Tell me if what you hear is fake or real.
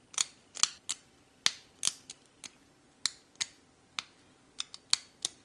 real